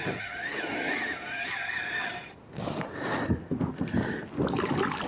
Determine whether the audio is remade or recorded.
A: recorded